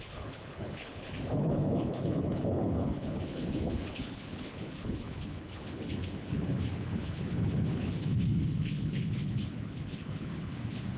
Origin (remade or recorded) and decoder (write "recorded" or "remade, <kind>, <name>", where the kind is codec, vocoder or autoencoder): remade, codec, HILCodec